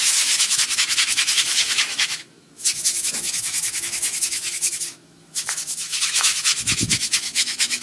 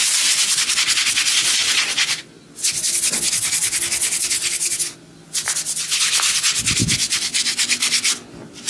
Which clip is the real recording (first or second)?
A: second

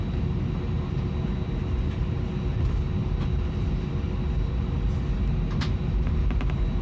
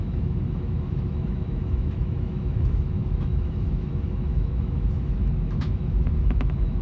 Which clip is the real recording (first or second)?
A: first